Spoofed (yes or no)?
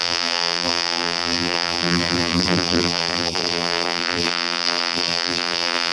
yes